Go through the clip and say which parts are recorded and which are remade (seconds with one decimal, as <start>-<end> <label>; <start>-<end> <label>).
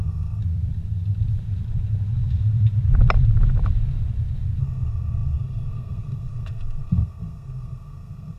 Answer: 0.0-0.4 remade; 0.4-4.6 recorded; 4.6-8.4 remade